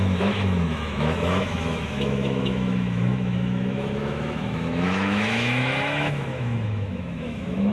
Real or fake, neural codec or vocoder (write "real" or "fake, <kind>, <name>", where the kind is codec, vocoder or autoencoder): fake, autoencoder, DAC-VAE